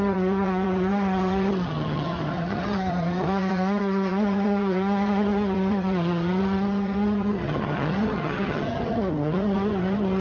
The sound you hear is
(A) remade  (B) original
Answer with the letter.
A